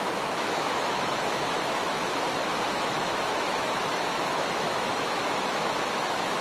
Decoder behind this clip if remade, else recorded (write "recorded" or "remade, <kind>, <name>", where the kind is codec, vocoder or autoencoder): remade, autoencoder, DAC-VAE